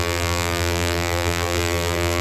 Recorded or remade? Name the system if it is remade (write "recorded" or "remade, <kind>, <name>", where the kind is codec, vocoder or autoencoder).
remade, vocoder, BigVGAN v2